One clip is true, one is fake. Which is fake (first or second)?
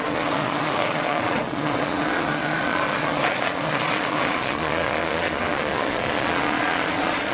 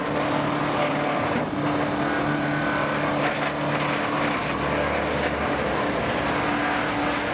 first